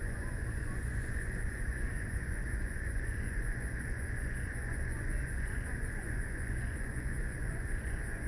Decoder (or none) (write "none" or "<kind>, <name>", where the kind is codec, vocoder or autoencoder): vocoder, Vocos